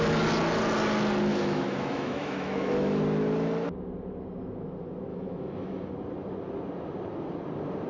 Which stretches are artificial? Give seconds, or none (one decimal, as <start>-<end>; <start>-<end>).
1.3-3.0; 5.1-5.9